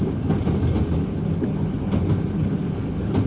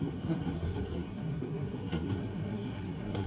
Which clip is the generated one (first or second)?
second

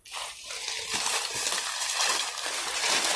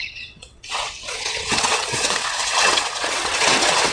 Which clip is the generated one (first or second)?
second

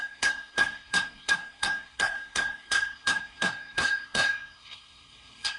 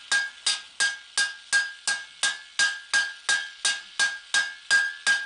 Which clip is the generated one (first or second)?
first